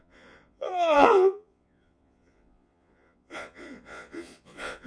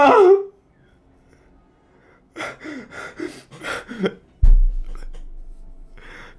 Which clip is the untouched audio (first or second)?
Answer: second